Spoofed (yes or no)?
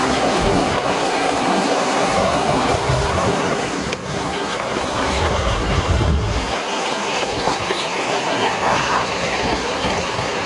yes